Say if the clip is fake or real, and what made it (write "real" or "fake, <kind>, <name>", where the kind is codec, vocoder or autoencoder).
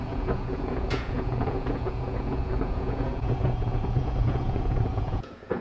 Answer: fake, vocoder, Vocos